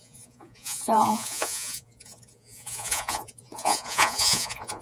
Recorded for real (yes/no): no